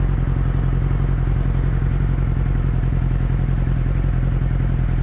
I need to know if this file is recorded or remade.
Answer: recorded